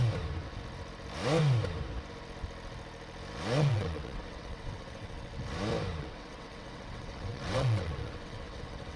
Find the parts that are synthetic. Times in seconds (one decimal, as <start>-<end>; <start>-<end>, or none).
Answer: 3.6-5.3; 6.0-9.0